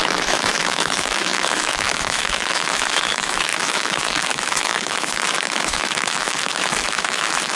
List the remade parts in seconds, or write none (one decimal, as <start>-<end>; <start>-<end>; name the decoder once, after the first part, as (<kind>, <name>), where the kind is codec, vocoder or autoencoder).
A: 0.0-7.6 (autoencoder, DAC-VAE)